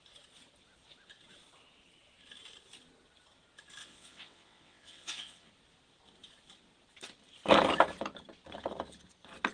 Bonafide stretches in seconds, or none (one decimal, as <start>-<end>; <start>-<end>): 0.0-3.8; 5.5-9.5

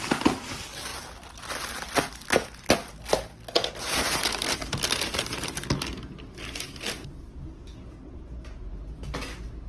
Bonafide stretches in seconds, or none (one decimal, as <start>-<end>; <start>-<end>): 0.0-9.7

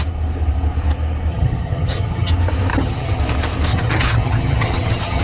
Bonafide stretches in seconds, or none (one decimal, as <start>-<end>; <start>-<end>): 0.0-1.3; 2.3-2.7; 3.2-3.7